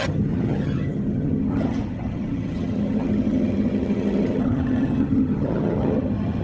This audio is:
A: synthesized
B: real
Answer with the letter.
A